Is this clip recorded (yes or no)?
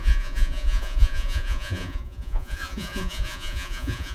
no